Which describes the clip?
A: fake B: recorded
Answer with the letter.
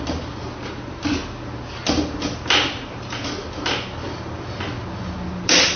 B